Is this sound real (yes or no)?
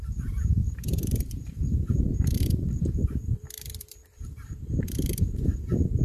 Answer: no